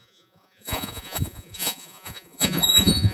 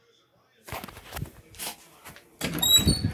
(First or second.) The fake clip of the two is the first